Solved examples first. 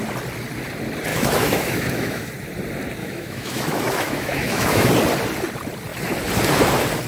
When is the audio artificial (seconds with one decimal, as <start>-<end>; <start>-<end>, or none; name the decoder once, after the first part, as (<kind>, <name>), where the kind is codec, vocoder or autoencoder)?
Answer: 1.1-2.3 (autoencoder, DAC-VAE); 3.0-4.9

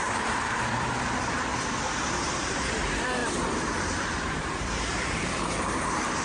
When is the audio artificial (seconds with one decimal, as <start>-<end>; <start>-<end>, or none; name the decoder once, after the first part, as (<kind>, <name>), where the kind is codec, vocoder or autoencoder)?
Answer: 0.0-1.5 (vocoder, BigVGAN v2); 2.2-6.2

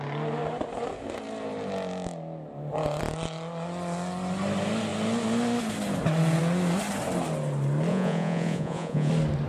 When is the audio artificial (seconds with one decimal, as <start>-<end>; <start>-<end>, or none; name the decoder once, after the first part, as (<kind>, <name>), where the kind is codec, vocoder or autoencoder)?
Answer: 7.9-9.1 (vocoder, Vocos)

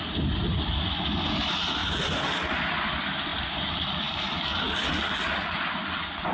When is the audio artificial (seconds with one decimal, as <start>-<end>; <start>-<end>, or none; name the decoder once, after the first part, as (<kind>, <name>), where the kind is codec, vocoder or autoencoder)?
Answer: 1.8-2.6 (vocoder, BigVGAN v2); 3.3-4.5